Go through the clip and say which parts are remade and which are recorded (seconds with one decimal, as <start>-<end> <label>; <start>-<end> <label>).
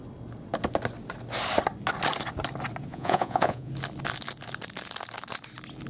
0.0-2.9 recorded; 2.9-3.7 remade; 3.7-5.9 recorded